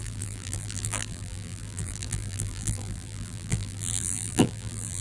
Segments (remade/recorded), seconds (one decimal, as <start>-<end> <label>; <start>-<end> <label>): 0.0-5.0 remade